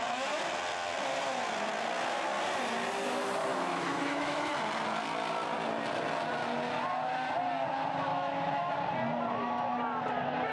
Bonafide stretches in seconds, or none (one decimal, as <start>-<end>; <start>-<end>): 0.0-3.5; 4.5-8.1; 8.7-10.5